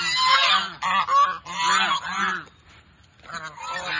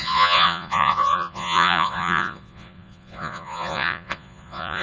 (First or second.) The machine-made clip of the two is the second